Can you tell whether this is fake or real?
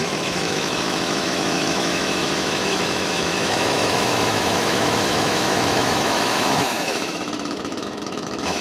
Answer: fake